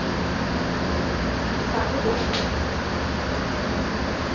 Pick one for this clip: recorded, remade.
remade